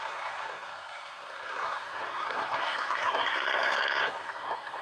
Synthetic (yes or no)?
yes